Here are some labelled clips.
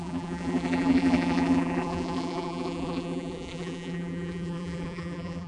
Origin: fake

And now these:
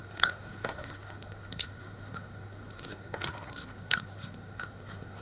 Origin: fake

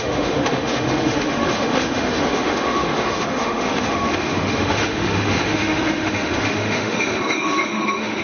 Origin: fake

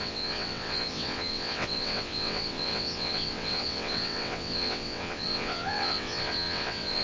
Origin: fake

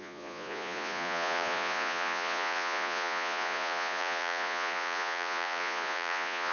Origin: fake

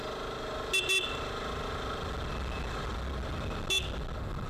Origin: real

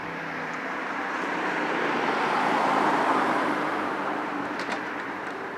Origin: fake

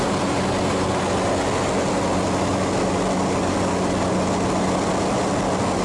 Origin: real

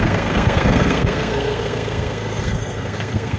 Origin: fake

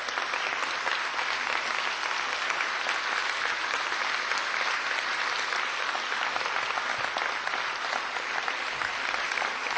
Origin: real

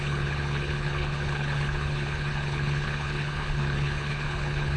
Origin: fake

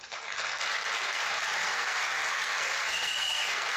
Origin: fake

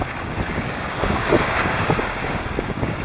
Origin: fake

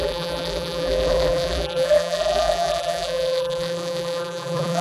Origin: fake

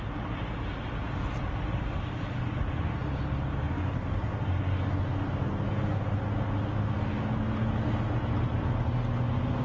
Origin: real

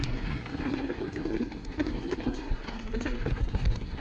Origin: fake